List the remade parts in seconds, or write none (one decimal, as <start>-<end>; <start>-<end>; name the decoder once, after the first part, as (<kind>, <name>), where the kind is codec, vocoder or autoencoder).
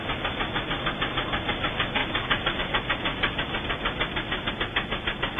3.1-4.5 (vocoder, BigVGAN v2)